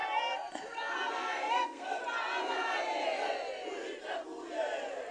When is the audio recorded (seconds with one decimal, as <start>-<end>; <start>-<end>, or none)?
0.0-1.1; 2.0-5.1